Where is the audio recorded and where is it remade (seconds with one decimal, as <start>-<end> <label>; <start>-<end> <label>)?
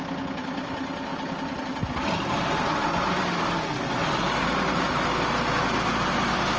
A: 0.0-6.6 recorded